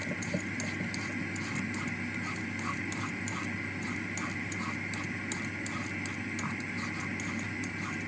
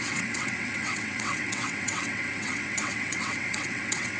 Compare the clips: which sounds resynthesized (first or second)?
second